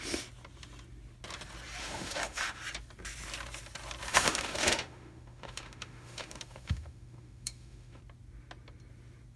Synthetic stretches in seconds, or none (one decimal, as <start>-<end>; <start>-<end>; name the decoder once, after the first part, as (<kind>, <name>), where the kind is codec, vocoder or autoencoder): 1.8-2.6 (autoencoder, DAC-VAE); 4.1-8.0